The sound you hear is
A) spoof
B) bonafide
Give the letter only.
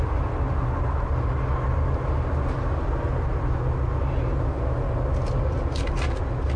B